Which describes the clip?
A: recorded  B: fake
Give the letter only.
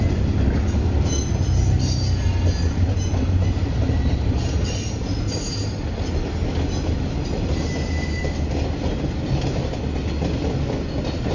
A